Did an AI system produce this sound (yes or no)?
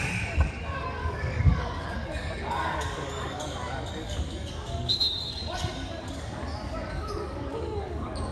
yes